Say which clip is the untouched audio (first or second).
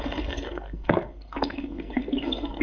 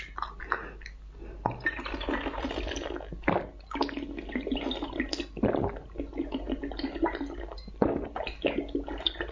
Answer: second